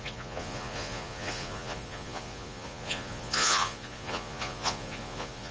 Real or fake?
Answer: fake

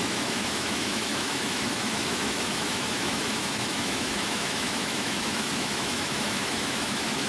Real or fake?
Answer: fake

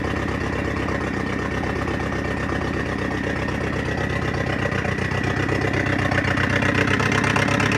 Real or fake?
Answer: real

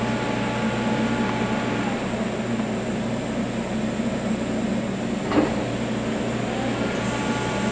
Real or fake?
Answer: real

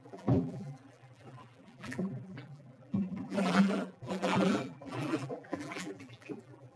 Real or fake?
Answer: fake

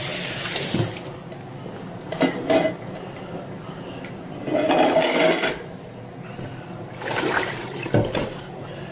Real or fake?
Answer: real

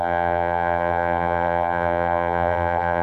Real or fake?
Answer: fake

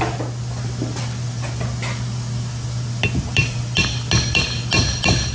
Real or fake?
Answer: real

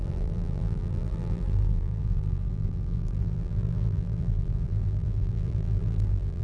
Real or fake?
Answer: fake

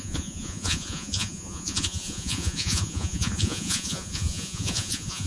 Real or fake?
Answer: fake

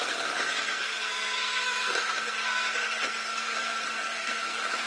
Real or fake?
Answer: fake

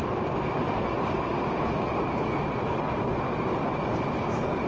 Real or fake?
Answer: real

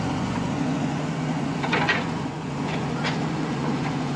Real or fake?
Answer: fake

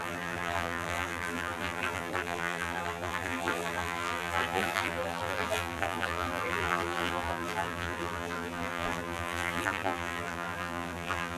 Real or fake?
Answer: fake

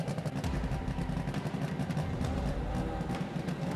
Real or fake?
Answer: real